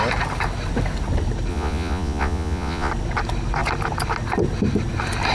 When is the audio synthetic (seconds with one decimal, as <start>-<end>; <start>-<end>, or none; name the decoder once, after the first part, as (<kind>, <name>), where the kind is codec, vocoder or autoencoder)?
1.5-2.9 (vocoder, Vocos)